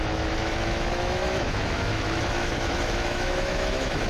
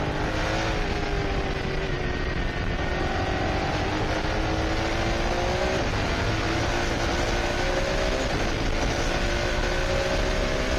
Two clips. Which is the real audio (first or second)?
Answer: second